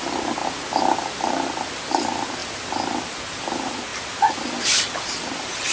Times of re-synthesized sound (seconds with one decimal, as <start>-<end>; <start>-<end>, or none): 0.4-1.3; 2.4-3.1